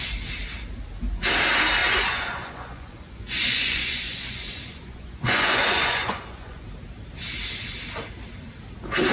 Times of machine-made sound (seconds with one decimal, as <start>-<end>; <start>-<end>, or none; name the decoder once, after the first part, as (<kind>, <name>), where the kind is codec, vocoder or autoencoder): 1.8-6.6 (vocoder, Vocos)